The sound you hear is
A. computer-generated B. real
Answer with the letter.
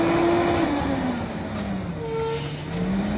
B